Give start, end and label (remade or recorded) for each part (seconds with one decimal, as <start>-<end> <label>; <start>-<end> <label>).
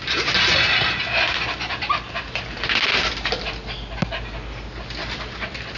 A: 0.0-5.8 recorded